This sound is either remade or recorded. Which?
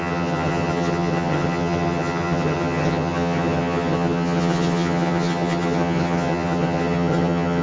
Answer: remade